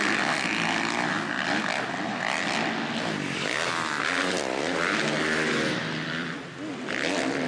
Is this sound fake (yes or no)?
no